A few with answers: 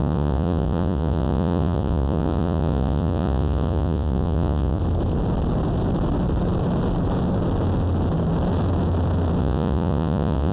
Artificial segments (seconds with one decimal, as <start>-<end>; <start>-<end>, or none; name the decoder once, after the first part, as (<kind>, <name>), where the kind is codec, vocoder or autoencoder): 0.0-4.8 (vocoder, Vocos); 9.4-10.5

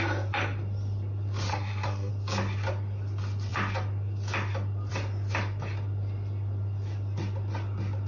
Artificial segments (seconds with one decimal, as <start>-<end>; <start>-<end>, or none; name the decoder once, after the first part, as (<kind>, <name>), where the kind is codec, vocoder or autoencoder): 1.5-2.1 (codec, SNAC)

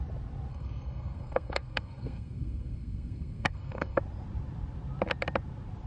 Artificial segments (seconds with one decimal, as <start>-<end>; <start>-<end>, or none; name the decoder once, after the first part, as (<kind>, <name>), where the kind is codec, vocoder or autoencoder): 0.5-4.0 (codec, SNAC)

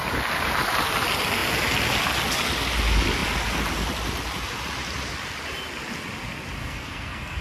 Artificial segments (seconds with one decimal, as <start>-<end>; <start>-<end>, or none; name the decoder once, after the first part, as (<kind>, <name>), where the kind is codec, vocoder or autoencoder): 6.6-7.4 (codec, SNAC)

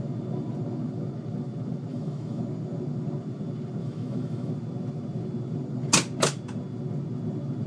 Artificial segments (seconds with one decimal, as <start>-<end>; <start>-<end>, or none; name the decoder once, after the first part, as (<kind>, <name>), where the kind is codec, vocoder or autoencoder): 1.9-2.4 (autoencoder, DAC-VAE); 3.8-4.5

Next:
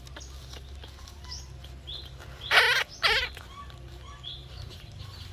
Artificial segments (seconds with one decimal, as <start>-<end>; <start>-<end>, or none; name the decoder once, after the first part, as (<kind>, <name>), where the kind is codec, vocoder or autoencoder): 4.4-5.3 (vocoder, BigVGAN v2)